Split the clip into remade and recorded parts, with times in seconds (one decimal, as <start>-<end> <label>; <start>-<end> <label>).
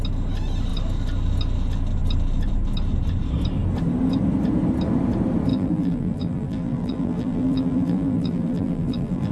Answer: 0.0-5.5 recorded; 5.5-9.3 remade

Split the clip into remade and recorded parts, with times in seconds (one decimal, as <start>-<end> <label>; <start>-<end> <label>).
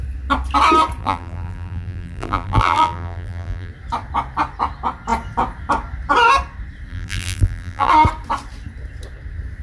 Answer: 0.0-1.0 recorded; 1.0-3.7 remade; 3.7-6.9 recorded; 6.9-7.9 remade; 7.9-9.6 recorded